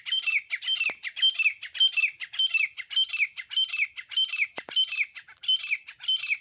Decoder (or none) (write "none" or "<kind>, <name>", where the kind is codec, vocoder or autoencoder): none